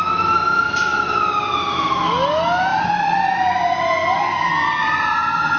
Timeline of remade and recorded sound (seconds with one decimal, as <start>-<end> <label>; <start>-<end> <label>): 0.0-0.4 recorded; 0.4-2.0 remade; 2.0-2.7 recorded; 2.7-3.8 remade; 3.8-4.8 recorded; 4.8-5.6 remade